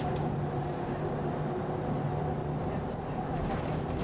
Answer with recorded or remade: remade